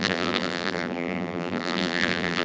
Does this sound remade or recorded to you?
remade